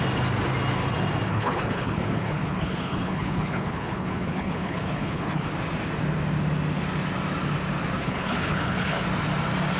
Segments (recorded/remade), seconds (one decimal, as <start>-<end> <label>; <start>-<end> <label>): 0.0-1.3 recorded; 1.3-5.5 remade; 5.5-8.0 recorded; 8.0-9.0 remade; 9.0-9.8 recorded